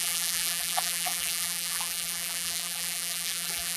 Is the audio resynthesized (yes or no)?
yes